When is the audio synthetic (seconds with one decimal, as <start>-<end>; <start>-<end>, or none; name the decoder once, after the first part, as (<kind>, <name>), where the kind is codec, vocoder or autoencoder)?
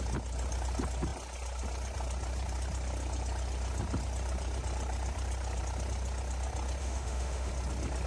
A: 6.8-7.5 (autoencoder, DAC-VAE)